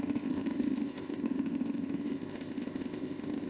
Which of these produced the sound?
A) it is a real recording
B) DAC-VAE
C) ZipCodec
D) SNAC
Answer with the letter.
C